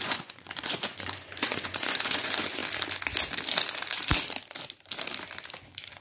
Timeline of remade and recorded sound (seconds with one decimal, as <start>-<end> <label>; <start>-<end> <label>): 0.0-2.6 remade; 2.6-5.6 recorded; 5.6-6.0 remade